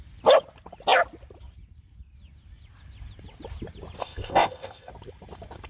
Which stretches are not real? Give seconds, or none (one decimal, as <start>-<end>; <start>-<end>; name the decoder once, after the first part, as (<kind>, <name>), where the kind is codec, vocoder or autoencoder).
4.0-4.9 (codec, ZipCodec)

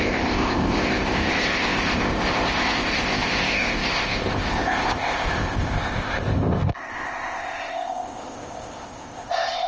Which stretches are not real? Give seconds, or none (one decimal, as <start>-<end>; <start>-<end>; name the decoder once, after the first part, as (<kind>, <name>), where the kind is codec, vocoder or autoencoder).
0.0-9.7 (codec, ZipCodec)

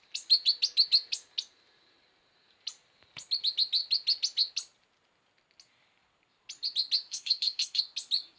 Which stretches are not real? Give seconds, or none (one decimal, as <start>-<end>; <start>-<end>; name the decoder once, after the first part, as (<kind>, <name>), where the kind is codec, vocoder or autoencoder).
7.1-7.8 (codec, ZipCodec)

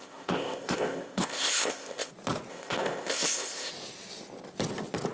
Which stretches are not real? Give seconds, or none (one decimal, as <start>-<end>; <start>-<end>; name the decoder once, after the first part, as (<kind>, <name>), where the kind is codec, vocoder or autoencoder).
0.0-2.1 (codec, ZipCodec); 2.5-3.7

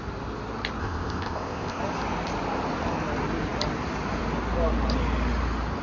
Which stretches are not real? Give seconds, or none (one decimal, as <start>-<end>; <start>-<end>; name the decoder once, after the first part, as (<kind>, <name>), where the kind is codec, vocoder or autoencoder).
0.8-1.8 (codec, ZipCodec)

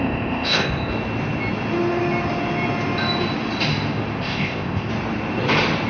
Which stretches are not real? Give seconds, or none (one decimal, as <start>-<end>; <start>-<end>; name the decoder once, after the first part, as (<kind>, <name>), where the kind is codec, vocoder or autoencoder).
0.0-0.9 (codec, ZipCodec); 4.2-4.9

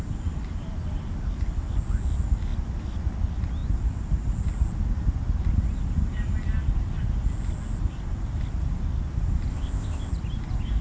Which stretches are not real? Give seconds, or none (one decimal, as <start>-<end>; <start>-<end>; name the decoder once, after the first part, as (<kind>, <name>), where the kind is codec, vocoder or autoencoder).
9.5-10.1 (codec, ZipCodec)